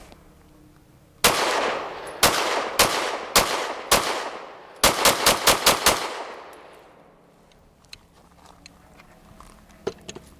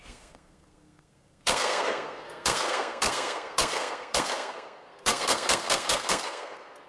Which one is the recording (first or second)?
first